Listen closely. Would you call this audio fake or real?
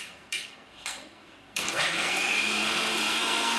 fake